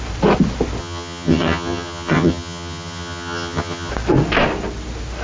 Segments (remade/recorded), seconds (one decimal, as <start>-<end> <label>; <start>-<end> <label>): 0.0-0.8 recorded; 0.8-3.9 remade; 3.9-5.2 recorded